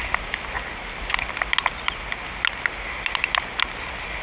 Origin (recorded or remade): recorded